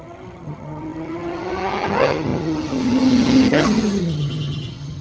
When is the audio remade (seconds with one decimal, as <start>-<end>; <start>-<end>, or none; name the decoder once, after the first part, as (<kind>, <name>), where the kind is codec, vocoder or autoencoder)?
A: 0.0-5.0 (vocoder, HiFi-GAN)